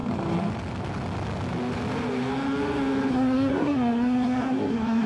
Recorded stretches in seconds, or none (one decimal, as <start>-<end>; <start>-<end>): 0.0-3.1